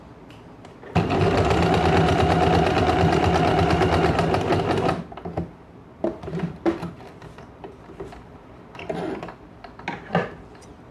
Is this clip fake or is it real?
real